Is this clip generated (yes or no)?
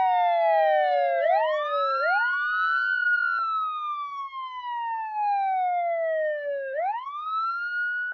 no